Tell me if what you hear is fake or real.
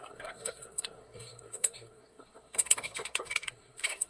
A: fake